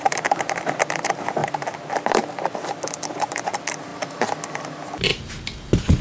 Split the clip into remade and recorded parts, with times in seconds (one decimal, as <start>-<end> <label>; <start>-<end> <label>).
0.0-6.0 recorded